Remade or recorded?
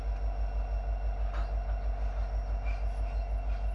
recorded